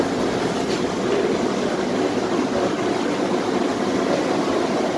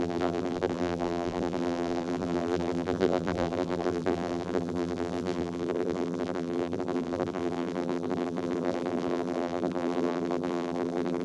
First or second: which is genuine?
first